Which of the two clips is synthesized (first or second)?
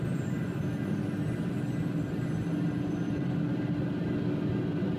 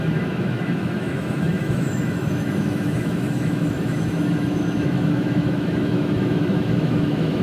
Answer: second